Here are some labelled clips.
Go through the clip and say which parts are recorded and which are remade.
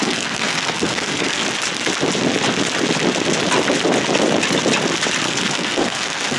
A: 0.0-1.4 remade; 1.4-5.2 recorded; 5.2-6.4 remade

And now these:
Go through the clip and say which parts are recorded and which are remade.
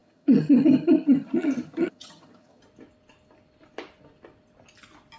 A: 0.0-2.6 remade; 2.6-5.2 recorded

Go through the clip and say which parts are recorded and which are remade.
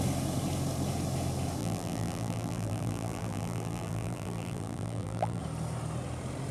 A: 0.0-1.6 recorded; 1.6-5.4 remade; 5.4-6.5 recorded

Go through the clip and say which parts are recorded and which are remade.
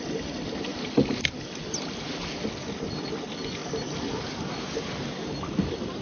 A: 0.0-6.0 recorded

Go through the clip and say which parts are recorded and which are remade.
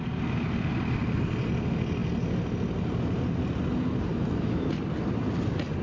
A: 0.0-4.1 recorded; 4.1-4.7 remade; 4.7-5.8 recorded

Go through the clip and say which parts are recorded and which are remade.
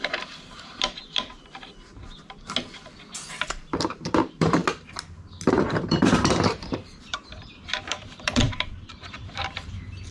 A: 0.0-1.9 remade; 1.9-3.3 recorded; 3.3-4.6 remade; 4.6-5.5 recorded; 5.5-10.1 remade